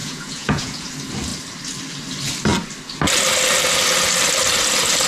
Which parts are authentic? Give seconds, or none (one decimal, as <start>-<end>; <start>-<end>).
0.9-5.1